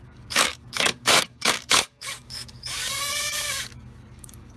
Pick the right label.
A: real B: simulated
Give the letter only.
B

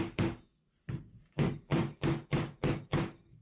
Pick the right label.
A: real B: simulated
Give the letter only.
B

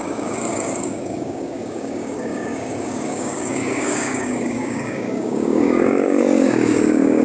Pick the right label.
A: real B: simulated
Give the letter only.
B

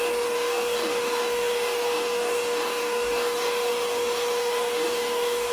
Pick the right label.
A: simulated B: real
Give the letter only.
A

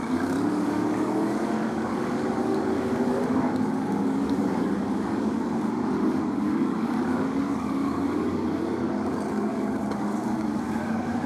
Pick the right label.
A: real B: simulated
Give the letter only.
B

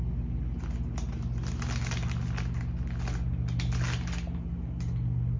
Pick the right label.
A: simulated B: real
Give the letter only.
B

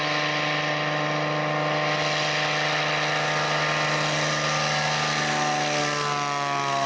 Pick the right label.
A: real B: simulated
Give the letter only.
A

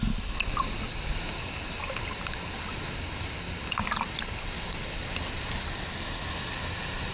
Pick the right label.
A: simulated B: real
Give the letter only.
B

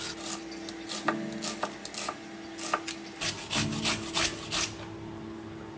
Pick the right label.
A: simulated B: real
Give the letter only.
B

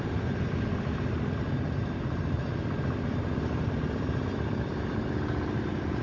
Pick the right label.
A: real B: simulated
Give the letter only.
A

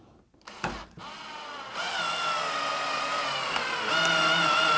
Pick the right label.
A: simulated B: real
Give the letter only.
B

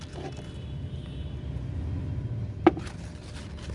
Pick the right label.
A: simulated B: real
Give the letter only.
B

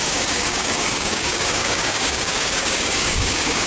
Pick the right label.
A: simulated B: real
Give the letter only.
A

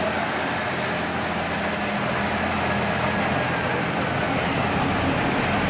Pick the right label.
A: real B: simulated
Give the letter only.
A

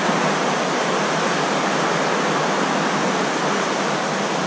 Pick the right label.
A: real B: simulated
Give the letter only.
A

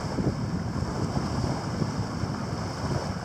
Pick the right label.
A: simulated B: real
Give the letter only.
B